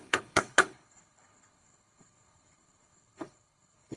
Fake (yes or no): yes